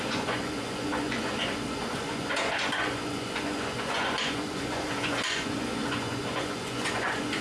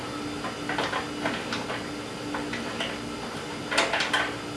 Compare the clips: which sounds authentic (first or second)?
second